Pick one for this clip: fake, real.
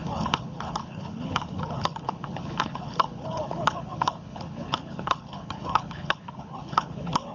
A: fake